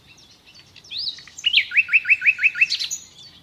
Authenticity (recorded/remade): recorded